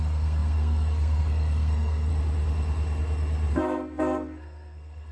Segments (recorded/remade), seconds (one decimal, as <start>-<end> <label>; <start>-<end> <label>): 0.0-2.1 remade; 2.1-3.5 recorded; 3.5-5.1 remade